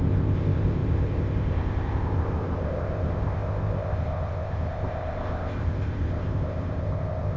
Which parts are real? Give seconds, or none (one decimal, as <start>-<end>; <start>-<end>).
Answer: none